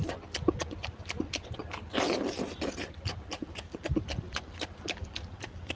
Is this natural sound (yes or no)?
yes